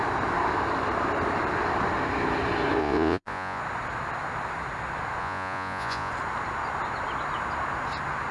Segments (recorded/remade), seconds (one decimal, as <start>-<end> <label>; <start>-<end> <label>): 0.0-2.8 recorded; 2.8-3.6 remade; 3.6-5.2 recorded; 5.2-6.1 remade; 6.1-8.3 recorded